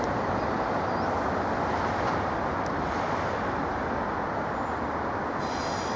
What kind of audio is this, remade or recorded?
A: recorded